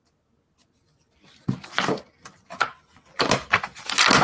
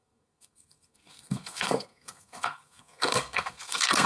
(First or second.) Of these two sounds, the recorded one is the first